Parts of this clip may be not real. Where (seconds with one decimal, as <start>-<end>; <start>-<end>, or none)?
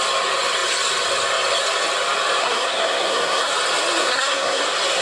2.4-3.5; 4.0-4.6